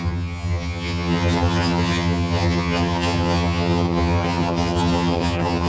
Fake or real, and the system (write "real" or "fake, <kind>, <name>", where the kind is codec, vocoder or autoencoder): fake, vocoder, HiFi-GAN